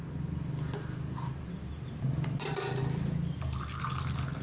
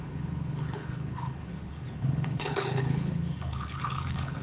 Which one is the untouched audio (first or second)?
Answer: first